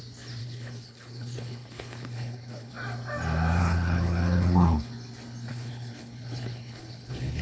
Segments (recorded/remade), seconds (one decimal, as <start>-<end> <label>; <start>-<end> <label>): 0.0-0.4 recorded; 0.4-2.7 remade; 2.7-3.6 recorded; 3.6-4.9 remade; 4.9-5.5 recorded; 5.5-7.4 remade